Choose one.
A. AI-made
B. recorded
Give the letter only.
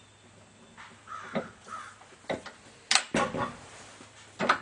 B